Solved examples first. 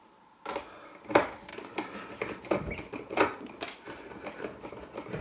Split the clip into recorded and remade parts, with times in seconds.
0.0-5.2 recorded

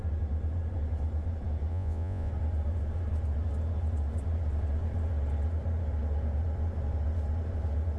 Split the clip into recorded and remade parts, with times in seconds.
0.0-1.7 recorded; 1.7-2.3 remade; 2.3-8.0 recorded

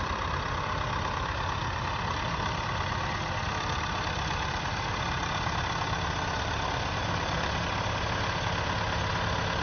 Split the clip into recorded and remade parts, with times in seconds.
0.0-9.6 recorded

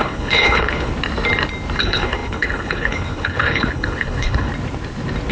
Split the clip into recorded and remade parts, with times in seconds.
0.0-0.9 remade; 0.9-1.8 recorded; 1.8-4.5 remade; 4.5-5.3 recorded

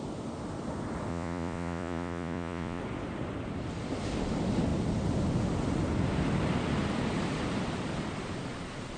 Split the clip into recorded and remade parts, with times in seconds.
0.0-1.1 recorded; 1.1-2.8 remade; 2.8-9.0 recorded

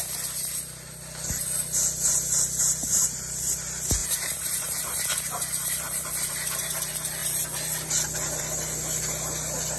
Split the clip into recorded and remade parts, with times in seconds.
0.0-4.0 recorded; 4.0-6.3 remade; 6.3-9.8 recorded

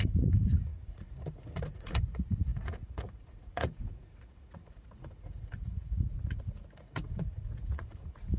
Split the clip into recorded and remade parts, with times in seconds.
0.0-8.4 remade